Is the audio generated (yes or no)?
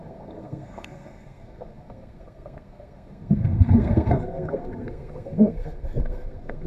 yes